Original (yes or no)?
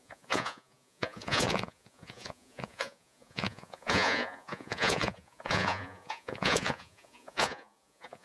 no